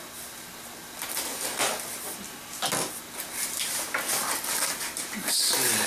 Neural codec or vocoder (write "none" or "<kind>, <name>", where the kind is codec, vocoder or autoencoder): none